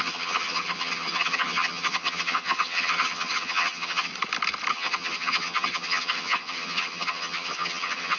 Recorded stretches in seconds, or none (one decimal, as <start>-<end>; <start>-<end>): 4.1-4.7